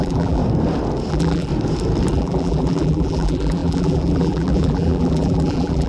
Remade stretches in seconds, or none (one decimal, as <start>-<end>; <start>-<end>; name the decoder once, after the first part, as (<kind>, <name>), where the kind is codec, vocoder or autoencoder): 0.0-0.4 (vocoder, BigVGAN v2); 1.1-1.5; 2.1-5.9